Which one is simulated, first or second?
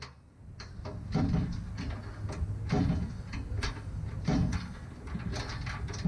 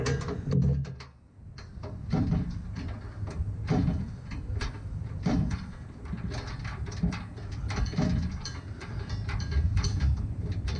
second